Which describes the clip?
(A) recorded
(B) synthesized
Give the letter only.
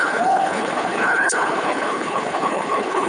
B